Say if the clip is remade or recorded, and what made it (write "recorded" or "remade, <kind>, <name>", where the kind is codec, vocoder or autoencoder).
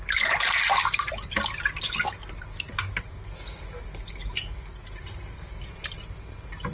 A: recorded